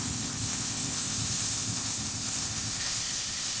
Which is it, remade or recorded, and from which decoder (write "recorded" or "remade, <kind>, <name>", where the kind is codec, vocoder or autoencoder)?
remade, codec, ZipCodec